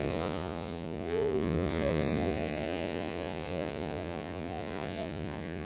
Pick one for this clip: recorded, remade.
remade